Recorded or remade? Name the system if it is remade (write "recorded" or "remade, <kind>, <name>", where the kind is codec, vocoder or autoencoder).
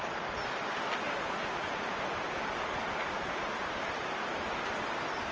recorded